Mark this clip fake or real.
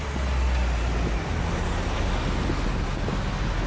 real